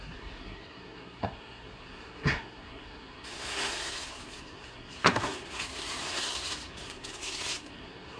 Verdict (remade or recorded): remade